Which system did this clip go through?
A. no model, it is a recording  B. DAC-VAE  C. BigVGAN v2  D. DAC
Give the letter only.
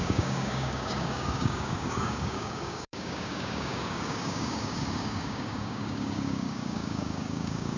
D